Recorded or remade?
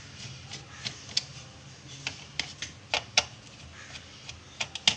recorded